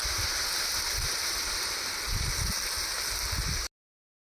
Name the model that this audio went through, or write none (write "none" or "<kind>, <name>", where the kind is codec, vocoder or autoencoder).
none